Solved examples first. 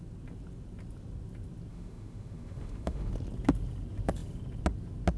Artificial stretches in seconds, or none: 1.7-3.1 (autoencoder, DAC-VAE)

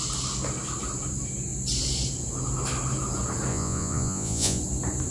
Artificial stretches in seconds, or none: 3.5-4.6 (vocoder, Vocos)

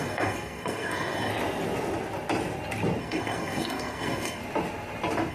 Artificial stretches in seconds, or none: 0.0-1.3 (codec, SNAC); 3.0-4.4

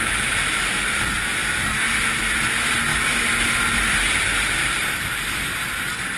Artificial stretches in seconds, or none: 1.4-2.2 (vocoder, BigVGAN v2); 2.9-3.9; 4.6-5.5

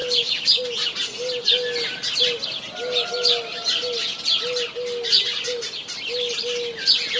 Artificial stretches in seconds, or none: none

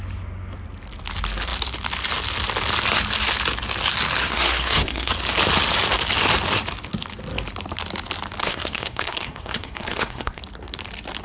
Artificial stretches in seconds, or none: 4.2-5.1 (codec, SNAC); 8.4-10.4

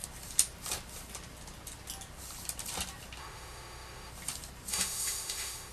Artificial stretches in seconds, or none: 3.2-4.1 (autoencoder, DAC-VAE); 4.7-5.7